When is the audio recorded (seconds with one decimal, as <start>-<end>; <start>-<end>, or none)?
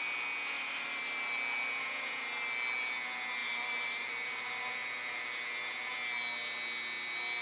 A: 0.0-3.4; 4.1-7.4